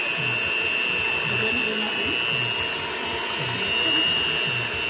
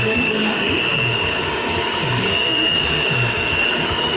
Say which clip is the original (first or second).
first